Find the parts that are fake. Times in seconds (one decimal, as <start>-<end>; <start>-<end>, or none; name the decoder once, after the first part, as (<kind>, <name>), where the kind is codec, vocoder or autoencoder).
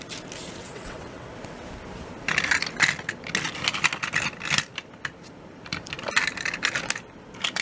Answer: 0.6-1.3 (vocoder, WaveNeXt)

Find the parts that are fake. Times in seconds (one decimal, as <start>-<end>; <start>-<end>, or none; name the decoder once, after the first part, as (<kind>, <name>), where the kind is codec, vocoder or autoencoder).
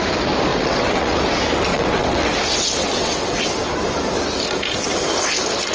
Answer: 0.5-1.2 (vocoder, WaveNeXt); 1.7-2.3; 2.8-3.5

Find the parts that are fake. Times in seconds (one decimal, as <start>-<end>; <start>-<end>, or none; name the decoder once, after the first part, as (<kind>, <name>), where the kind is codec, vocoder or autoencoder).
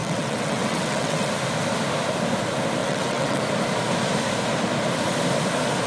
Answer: 0.0-1.3 (vocoder, WaveNeXt); 2.8-3.4